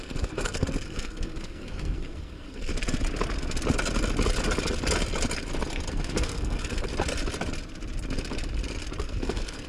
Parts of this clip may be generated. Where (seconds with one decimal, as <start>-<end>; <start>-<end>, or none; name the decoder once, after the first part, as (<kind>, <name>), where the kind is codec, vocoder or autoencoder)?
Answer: 0.0-2.7 (codec, SNAC); 5.9-6.9; 9.0-9.7